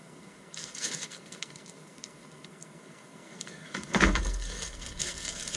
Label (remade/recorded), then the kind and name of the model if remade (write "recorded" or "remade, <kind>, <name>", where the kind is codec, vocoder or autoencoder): remade, codec, SNAC